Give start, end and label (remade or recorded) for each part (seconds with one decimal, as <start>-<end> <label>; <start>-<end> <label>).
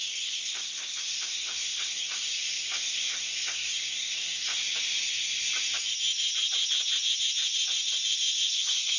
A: 0.0-4.6 remade; 4.6-8.5 recorded; 8.5-9.0 remade